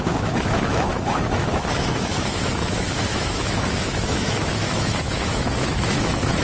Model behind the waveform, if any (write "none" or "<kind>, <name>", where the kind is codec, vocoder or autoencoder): autoencoder, DAC-VAE